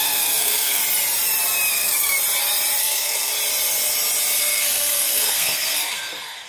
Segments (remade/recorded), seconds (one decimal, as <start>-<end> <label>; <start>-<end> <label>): 0.0-0.8 remade; 0.8-1.7 recorded; 1.7-2.1 remade; 2.1-2.8 recorded; 2.8-3.3 remade; 3.3-4.4 recorded; 4.4-6.5 remade